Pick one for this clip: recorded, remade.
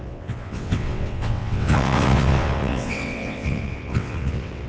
remade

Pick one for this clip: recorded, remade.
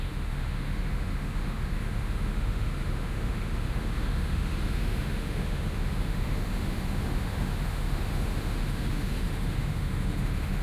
remade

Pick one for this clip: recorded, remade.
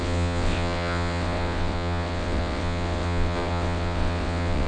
remade